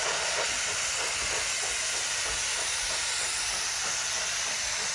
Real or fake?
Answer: fake